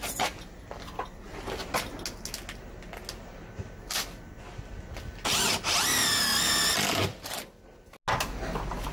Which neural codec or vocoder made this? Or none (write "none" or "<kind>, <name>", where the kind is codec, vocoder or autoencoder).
none